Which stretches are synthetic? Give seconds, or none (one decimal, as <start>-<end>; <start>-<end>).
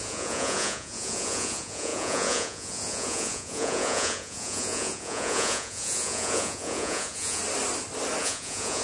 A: 0.0-7.4; 8.2-8.8